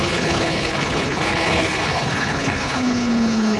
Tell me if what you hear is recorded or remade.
remade